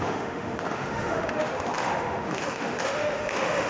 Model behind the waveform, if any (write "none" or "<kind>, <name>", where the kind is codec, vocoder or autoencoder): autoencoder, DAC-VAE